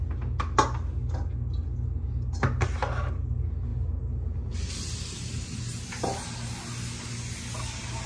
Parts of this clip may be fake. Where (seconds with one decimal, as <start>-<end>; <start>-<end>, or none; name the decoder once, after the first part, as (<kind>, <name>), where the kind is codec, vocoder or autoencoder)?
none